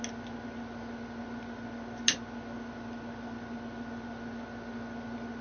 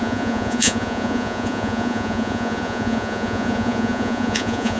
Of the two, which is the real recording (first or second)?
first